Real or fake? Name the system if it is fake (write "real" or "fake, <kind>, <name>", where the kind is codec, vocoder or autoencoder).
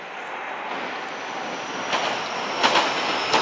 real